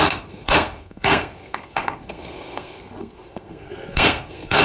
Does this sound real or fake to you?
fake